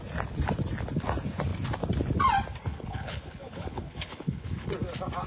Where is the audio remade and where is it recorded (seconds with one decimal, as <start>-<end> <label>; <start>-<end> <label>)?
0.0-2.7 recorded; 2.7-4.7 remade; 4.7-5.3 recorded